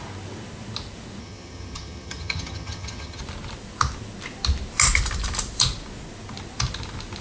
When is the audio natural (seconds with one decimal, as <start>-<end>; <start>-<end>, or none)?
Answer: 0.0-1.2; 3.2-7.2